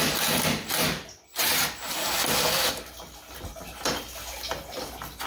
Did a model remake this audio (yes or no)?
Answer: no